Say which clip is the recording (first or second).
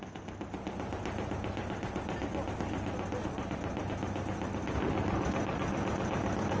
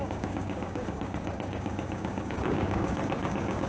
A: first